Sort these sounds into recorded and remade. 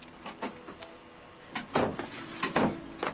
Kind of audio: recorded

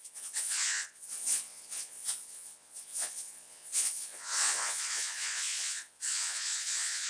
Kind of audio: remade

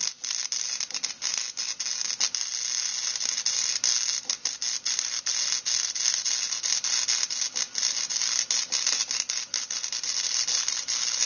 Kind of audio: recorded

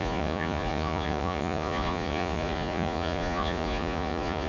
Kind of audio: remade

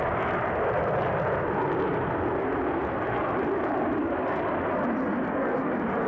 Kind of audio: recorded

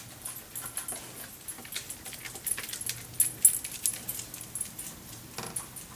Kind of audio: recorded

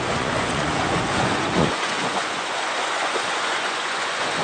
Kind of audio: remade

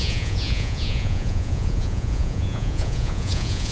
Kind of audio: remade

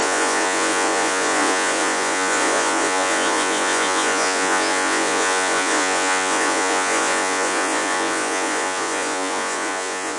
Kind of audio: remade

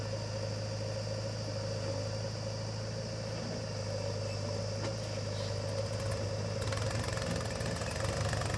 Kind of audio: recorded